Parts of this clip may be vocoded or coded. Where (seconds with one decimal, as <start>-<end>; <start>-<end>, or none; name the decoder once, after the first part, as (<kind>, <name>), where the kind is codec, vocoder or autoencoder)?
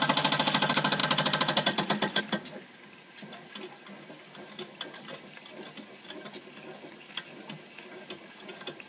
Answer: none